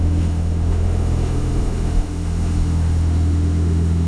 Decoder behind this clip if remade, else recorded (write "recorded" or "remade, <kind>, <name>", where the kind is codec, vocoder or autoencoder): remade, autoencoder, DAC-VAE